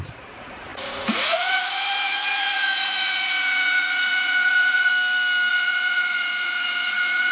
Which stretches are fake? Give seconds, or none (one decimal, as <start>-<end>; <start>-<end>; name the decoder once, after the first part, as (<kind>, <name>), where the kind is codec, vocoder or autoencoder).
0.0-4.9 (vocoder, Vocos); 5.5-7.3